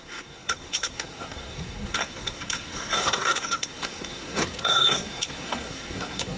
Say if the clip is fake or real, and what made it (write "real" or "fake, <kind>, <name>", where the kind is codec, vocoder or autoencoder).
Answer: fake, codec, SNAC